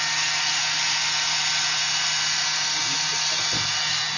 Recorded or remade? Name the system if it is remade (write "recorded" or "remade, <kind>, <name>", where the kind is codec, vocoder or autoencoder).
recorded